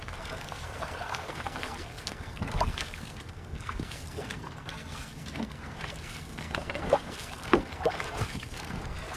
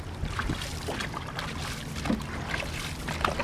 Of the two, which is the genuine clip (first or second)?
second